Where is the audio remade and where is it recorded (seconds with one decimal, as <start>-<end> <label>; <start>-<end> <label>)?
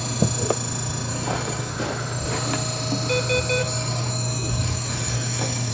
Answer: 0.0-1.1 recorded; 1.1-1.7 remade; 1.7-3.6 recorded; 3.6-5.7 remade